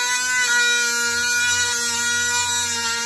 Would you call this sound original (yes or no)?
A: yes